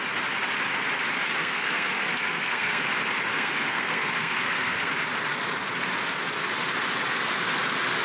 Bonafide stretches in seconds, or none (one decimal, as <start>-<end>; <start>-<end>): 0.0-1.4; 2.9-3.3; 4.9-8.0